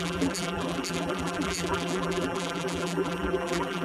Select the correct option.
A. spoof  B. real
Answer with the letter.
A